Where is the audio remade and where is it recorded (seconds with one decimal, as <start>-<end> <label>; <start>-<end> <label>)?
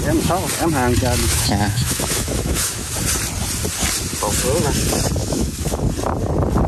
0.0-1.2 recorded; 1.2-2.9 remade; 2.9-5.2 recorded; 5.2-5.8 remade; 5.8-6.7 recorded